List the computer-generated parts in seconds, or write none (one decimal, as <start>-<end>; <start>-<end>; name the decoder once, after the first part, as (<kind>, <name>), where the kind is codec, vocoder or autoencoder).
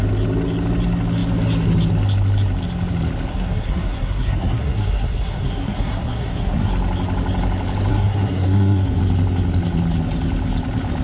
3.3-6.7 (codec, SNAC); 7.9-9.0